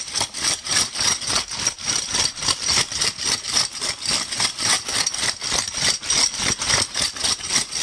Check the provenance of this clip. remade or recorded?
recorded